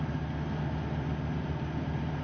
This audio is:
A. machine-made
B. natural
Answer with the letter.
B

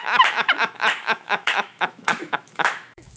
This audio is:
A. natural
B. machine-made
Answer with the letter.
B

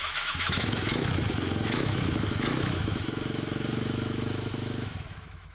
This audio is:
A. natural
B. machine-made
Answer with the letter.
B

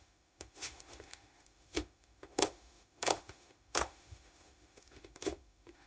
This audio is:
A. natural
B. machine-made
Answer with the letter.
B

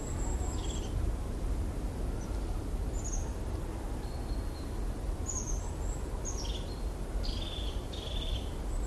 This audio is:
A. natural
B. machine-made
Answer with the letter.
A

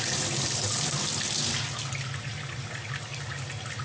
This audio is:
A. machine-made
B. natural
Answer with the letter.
B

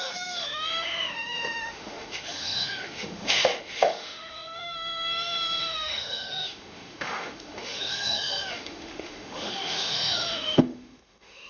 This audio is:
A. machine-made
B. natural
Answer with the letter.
A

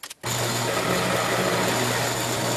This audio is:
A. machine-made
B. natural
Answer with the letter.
B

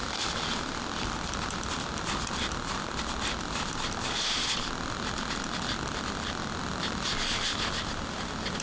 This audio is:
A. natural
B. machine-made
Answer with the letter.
A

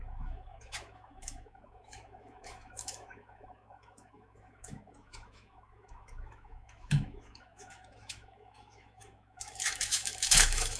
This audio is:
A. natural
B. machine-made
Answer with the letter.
B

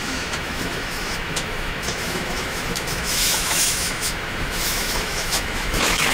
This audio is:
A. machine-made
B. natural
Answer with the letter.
A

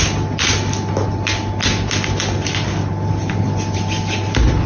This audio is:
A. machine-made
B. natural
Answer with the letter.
B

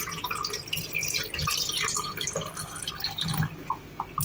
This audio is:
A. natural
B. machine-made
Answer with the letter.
A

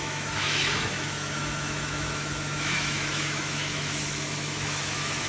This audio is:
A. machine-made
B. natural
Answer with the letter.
A